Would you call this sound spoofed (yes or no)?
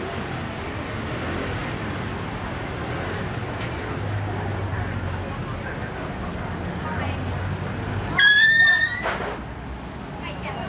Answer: no